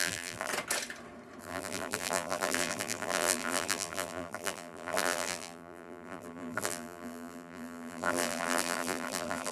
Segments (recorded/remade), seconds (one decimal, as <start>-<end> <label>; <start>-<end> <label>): 0.0-0.5 remade; 0.5-1.4 recorded; 1.4-9.5 remade